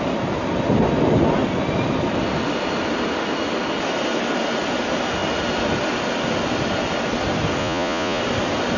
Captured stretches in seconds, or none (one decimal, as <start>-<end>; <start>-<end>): 0.0-7.6; 8.2-8.8